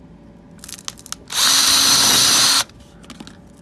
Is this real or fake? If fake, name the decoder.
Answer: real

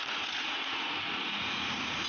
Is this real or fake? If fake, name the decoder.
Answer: fake, vocoder, Vocos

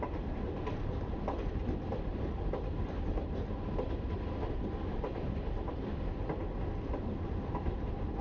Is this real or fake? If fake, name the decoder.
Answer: real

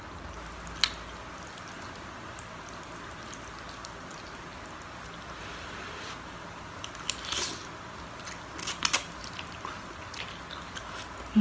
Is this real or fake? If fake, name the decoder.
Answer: real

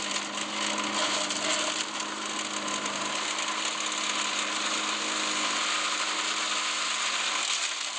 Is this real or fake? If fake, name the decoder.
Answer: real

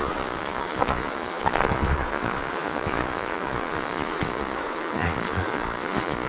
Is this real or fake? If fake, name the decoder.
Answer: fake, vocoder, Vocos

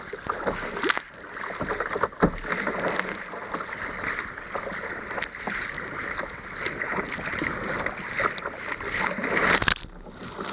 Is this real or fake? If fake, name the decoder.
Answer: real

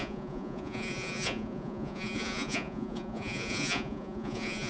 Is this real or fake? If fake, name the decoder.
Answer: fake, vocoder, Vocos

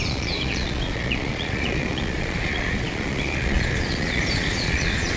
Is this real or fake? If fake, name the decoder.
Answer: fake, vocoder, Vocos